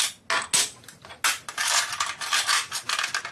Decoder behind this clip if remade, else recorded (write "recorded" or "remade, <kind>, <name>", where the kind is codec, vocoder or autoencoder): recorded